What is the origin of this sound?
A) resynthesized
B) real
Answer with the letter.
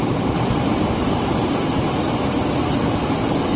A